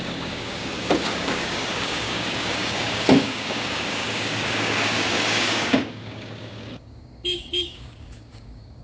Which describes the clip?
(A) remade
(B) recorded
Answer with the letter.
A